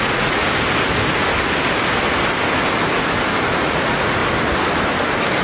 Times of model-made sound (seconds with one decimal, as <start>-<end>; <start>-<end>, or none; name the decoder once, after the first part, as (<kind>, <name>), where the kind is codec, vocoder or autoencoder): 0.0-0.4 (vocoder, Vocos); 3.6-4.2